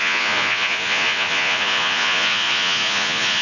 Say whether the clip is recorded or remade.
remade